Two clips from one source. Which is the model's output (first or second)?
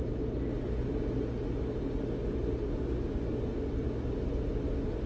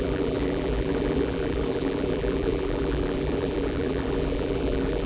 second